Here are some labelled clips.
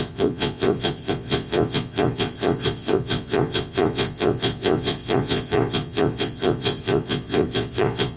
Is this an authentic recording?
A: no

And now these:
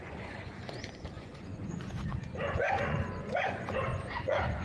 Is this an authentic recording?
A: no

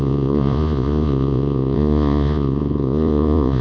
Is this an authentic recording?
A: no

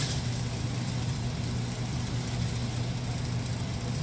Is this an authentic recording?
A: yes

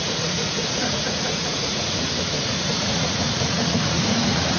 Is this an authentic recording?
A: no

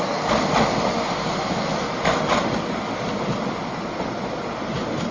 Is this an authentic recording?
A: yes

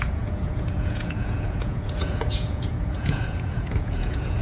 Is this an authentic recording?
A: no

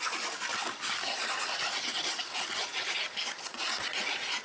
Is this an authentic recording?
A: yes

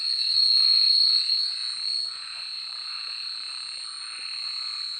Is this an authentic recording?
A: no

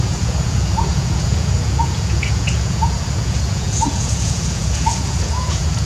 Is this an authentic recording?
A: no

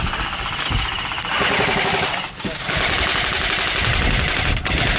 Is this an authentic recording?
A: yes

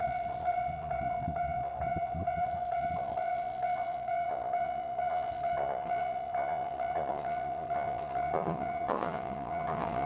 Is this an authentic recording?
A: no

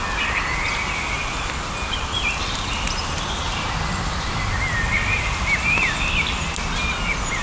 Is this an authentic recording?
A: yes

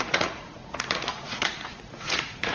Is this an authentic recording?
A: no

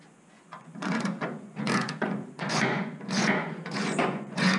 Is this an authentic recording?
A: no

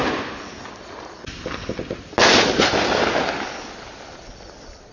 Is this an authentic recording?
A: yes